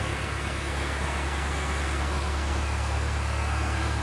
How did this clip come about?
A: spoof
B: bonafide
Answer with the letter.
A